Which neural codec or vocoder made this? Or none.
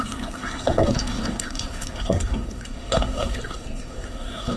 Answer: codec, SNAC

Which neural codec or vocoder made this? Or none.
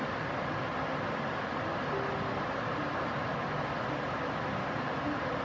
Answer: none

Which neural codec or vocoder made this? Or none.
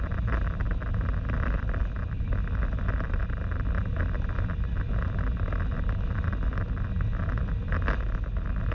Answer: none